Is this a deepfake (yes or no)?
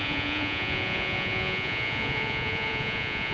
yes